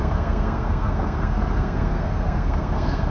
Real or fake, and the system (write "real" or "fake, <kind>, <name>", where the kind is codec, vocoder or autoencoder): fake, codec, SNAC